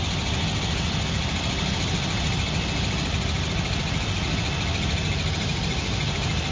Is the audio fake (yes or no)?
no